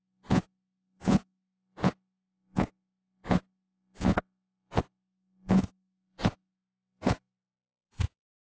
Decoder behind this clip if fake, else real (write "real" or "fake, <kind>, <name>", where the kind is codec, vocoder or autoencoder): fake, vocoder, Vocos